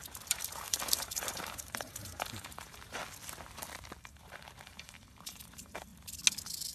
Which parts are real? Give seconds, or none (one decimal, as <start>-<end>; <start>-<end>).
3.0-4.0; 5.9-6.7